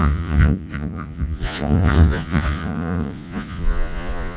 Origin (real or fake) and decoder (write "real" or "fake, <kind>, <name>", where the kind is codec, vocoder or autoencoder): fake, vocoder, Vocos